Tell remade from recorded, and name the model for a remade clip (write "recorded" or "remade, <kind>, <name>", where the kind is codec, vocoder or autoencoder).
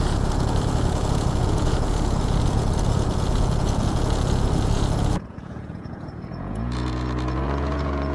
remade, vocoder, Vocos